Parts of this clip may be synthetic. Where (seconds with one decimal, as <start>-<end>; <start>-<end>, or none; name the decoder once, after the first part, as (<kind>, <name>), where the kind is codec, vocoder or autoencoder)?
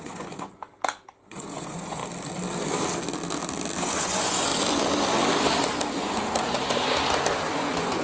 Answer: 0.0-0.7 (vocoder, Vocos); 1.3-2.0; 3.8-4.5; 7.5-8.0